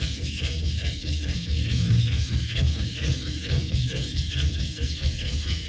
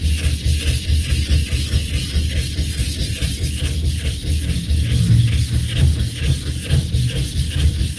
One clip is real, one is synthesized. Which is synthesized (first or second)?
first